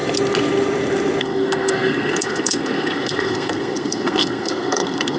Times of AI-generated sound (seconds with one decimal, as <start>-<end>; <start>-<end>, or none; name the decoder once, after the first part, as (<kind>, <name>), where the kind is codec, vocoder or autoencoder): 1.2-5.2 (codec, SNAC)